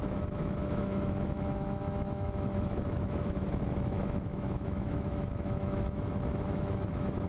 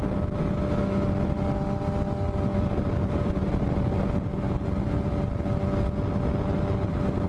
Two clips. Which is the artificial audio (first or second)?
first